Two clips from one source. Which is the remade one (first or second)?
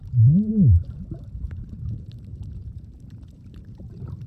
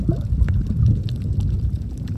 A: first